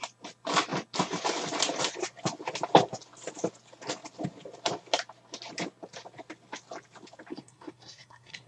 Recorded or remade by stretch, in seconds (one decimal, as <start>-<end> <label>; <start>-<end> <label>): 0.0-7.3 recorded; 7.3-8.5 remade